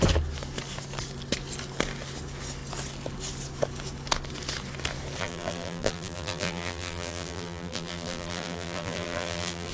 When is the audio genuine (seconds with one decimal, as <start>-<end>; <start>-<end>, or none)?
0.0-5.2